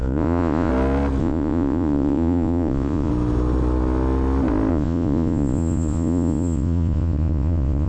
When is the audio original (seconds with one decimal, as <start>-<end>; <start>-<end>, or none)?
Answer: 0.7-1.2; 3.1-4.7